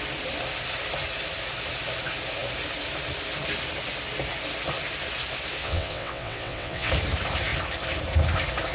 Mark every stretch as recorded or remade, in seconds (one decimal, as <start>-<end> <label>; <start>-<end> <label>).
0.0-5.6 recorded; 5.6-6.9 remade; 6.9-8.7 recorded